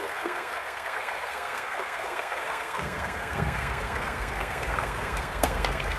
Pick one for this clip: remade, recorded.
remade